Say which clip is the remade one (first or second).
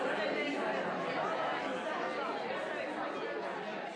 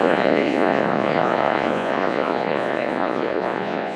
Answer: second